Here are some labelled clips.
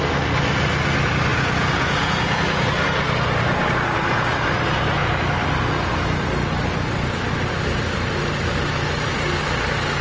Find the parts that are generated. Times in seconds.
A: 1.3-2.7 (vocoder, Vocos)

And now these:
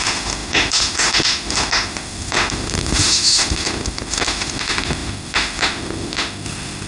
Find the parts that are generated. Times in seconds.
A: 0.0-6.9 (autoencoder, DAC-VAE)

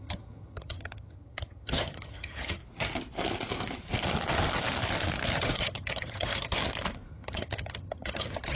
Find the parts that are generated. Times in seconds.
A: 0.0-2.6 (vocoder, HiFi-GAN); 5.3-6.6; 7.1-8.6

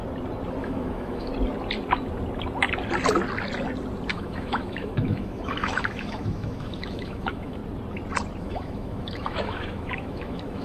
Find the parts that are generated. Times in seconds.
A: 0.6-1.3 (autoencoder, DAC-VAE); 4.1-7.6; 8.4-10.6

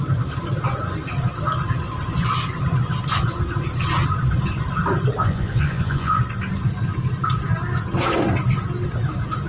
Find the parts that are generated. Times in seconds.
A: 5.2-6.2 (vocoder, Vocos)

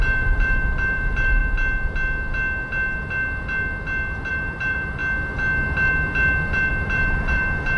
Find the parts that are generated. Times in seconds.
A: 0.0-1.4 (vocoder, BigVGAN v2); 4.3-5.0; 6.7-7.8

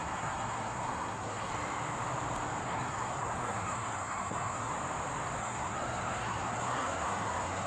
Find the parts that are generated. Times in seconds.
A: 0.0-1.5 (codec, SNAC); 2.6-4.7; 5.4-7.7

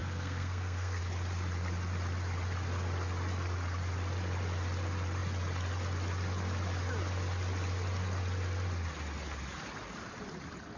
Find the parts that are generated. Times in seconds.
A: 0.0-1.0 (codec, SNAC)